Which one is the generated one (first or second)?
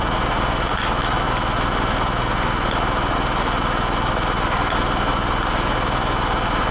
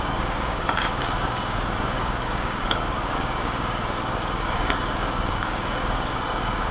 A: second